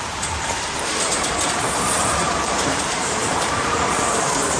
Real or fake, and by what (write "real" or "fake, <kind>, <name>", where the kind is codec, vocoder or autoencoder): fake, vocoder, BigVGAN v2